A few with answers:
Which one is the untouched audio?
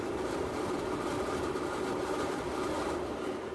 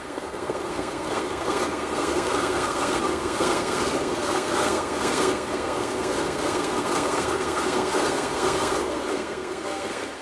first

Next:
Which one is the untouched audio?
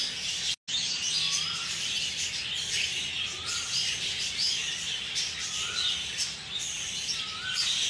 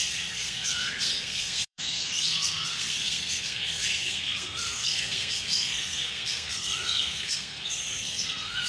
first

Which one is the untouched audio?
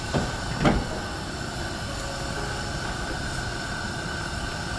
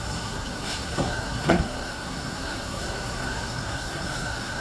first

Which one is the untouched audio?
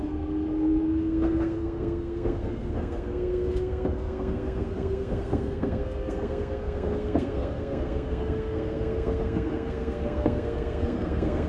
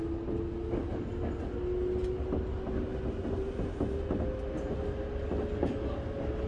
second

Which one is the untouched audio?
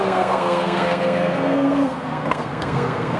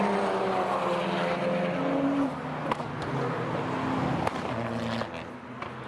second